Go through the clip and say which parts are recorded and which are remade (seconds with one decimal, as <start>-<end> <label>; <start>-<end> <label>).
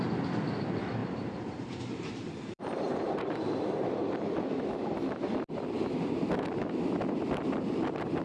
0.0-1.0 recorded; 1.0-4.6 remade; 4.6-8.2 recorded